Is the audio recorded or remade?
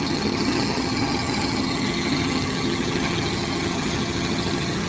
remade